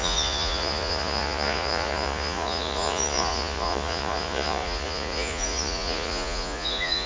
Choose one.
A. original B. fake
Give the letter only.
B